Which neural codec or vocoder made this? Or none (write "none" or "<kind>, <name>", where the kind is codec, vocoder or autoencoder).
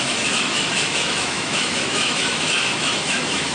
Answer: autoencoder, DAC-VAE